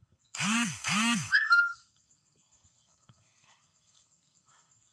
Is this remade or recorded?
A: remade